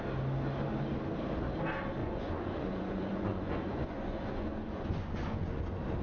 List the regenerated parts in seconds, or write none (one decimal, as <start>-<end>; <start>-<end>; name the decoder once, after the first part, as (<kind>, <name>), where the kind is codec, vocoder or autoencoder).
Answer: 2.0-5.6 (vocoder, Vocos)